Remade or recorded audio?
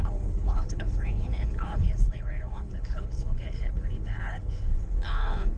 remade